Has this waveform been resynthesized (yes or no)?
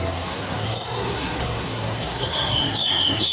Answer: yes